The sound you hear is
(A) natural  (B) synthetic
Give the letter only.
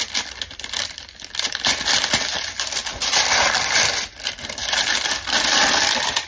A